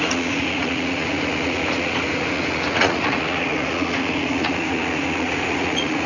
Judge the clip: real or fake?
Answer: fake